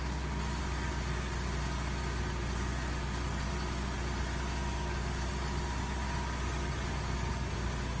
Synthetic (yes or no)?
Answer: no